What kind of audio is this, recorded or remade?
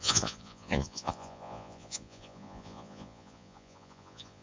remade